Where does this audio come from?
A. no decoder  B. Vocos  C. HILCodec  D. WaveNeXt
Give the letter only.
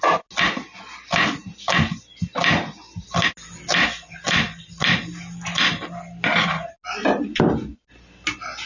A